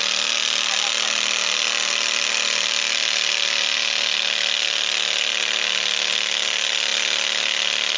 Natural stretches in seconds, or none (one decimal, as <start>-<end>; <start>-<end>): 0.0-8.0